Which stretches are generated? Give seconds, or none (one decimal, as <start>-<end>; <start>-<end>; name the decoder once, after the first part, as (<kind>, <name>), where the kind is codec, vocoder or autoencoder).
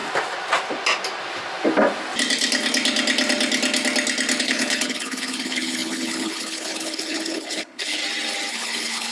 4.4-8.0 (codec, HILCodec); 8.5-9.1